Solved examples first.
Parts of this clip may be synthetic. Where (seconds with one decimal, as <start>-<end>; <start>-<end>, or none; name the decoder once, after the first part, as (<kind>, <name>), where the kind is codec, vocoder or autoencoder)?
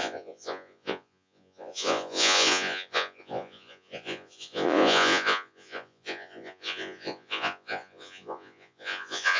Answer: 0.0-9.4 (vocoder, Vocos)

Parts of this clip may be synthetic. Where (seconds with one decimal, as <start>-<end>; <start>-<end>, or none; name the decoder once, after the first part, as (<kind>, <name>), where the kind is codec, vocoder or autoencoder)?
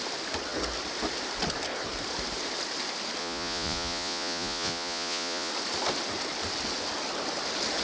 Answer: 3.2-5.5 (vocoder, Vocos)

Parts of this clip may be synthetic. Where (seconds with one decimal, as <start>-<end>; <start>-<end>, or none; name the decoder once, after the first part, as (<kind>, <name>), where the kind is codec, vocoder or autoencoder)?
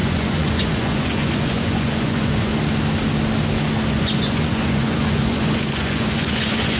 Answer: 0.0-2.5 (vocoder, Vocos); 3.9-6.8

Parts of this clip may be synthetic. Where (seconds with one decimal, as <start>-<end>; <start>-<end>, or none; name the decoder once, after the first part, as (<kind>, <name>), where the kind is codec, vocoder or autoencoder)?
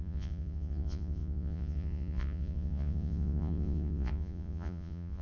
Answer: 0.0-5.2 (vocoder, Vocos)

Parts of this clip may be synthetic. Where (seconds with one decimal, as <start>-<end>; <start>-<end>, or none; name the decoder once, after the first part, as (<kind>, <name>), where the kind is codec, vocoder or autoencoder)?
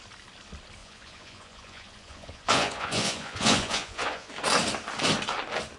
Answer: 0.8-4.3 (vocoder, Vocos)